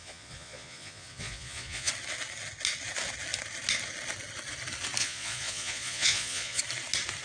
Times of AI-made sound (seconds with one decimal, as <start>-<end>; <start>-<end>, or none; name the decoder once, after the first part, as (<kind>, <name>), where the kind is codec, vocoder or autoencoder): 0.0-1.9 (vocoder, Vocos); 5.0-6.6